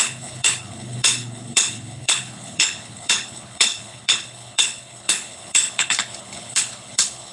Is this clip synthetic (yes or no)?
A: yes